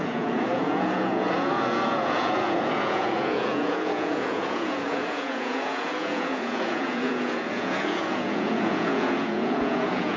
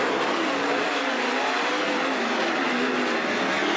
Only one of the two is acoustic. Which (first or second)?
second